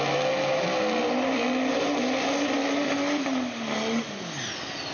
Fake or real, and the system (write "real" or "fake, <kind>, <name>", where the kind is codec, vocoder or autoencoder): real